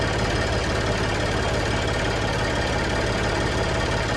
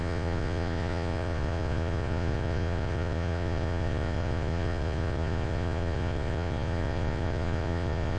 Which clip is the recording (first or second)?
first